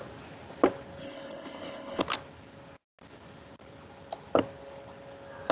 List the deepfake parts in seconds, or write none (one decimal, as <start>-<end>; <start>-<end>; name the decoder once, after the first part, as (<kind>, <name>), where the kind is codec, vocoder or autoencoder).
1.0-2.0 (codec, HILCodec)